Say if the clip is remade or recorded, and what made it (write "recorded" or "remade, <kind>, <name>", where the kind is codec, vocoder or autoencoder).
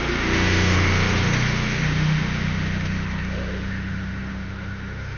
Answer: remade, autoencoder, DAC-VAE